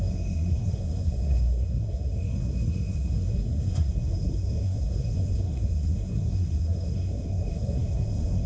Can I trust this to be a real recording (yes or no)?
no